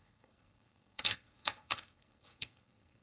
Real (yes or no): no